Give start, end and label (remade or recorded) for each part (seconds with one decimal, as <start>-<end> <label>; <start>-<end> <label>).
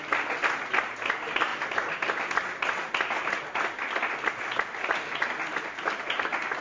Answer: 0.0-6.6 recorded